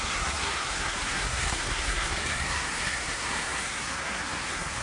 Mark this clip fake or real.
fake